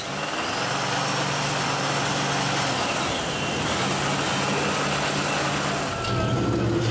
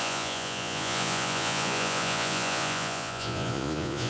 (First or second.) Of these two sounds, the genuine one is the first